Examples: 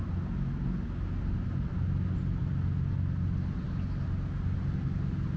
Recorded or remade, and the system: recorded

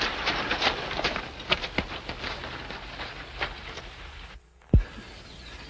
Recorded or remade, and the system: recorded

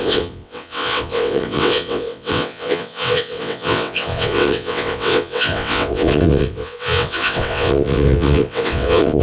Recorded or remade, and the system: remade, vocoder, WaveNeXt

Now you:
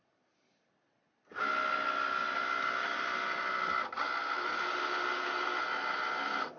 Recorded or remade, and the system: recorded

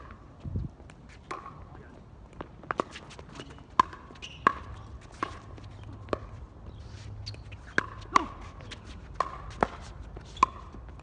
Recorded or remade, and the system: recorded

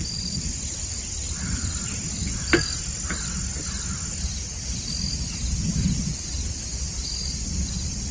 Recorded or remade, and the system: remade, vocoder, BigVGAN v2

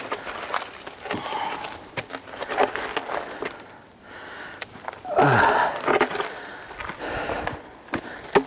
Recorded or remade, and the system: recorded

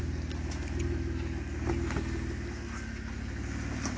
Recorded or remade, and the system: recorded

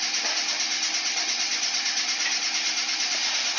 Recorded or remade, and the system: recorded